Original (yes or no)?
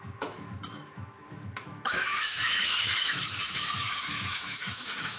no